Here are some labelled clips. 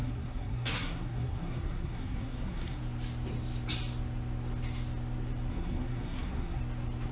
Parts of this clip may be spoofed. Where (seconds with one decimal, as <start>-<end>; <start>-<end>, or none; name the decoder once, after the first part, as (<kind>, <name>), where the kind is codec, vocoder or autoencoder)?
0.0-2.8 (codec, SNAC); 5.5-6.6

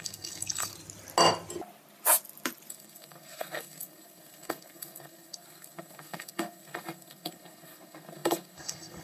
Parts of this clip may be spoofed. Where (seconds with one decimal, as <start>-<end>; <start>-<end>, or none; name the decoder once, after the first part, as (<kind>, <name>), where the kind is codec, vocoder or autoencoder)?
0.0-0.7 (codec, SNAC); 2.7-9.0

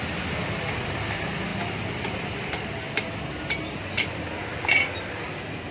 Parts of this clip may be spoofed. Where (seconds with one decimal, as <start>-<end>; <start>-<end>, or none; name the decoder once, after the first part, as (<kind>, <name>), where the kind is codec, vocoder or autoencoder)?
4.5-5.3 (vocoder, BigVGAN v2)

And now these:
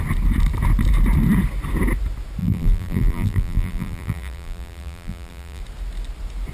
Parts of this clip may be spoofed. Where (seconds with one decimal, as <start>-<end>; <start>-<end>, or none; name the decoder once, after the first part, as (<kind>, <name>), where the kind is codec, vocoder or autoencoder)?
2.4-5.6 (vocoder, BigVGAN v2)

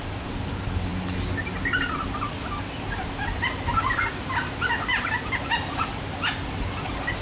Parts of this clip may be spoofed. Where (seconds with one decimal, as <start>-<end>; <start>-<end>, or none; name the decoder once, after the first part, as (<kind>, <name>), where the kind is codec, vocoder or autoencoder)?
none

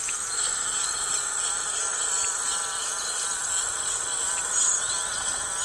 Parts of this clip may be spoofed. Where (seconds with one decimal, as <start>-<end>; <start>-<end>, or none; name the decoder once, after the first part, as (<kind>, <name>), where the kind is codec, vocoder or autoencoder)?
0.0-1.2 (vocoder, BigVGAN v2); 1.9-3.8; 4.3-4.9